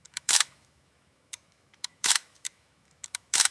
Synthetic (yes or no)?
yes